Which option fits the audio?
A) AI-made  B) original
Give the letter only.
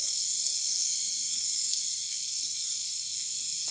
A